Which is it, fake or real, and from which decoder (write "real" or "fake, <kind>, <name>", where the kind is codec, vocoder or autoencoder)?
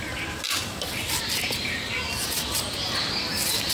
real